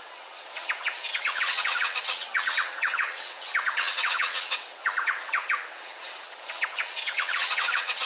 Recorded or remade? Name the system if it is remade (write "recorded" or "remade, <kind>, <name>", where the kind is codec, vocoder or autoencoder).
remade, vocoder, WaveNeXt